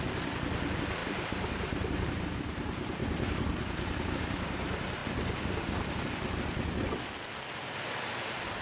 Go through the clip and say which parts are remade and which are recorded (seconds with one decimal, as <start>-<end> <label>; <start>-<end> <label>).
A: 0.0-1.0 recorded; 1.0-4.6 remade; 4.6-8.6 recorded